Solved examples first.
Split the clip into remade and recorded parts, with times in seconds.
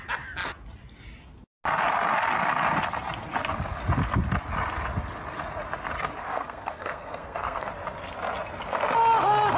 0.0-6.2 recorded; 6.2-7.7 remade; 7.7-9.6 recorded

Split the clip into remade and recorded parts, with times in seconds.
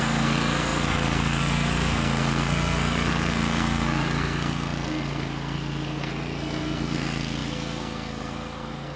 0.0-9.0 remade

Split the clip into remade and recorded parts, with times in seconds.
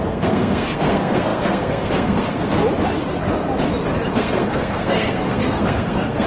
0.0-2.6 remade; 2.6-4.1 recorded; 4.1-6.3 remade